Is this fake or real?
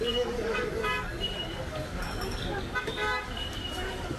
fake